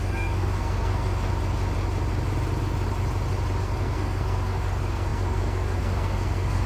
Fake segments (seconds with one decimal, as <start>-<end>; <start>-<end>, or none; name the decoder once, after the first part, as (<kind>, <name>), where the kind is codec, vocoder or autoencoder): 0.0-1.3 (codec, SNAC); 3.6-6.7